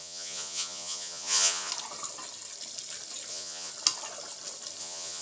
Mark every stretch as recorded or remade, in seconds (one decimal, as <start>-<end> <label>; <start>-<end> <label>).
0.0-1.7 remade; 1.7-3.3 recorded; 3.3-3.7 remade; 3.7-4.8 recorded; 4.8-5.2 remade